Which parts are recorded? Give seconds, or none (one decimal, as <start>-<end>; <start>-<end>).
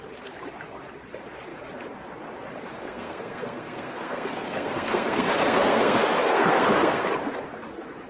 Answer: 0.0-2.7; 7.1-8.1